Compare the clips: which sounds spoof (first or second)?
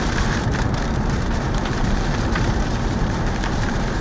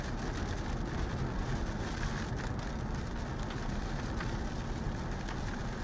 first